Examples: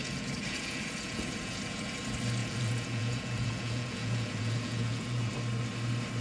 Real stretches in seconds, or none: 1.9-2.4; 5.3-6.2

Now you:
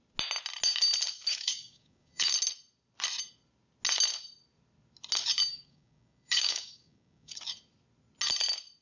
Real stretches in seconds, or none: 0.0-1.3; 2.3-5.5; 7.3-8.8